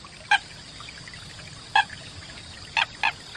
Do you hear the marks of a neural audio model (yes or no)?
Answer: no